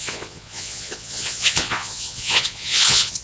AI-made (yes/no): yes